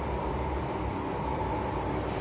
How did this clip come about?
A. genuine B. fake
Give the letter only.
A